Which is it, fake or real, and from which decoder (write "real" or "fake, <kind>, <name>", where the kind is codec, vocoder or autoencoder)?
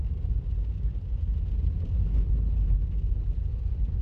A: real